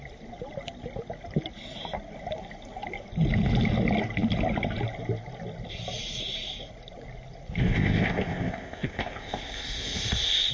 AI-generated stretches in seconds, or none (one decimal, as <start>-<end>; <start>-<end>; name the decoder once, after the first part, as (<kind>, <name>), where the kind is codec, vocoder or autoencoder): 7.6-10.5 (codec, ZipCodec)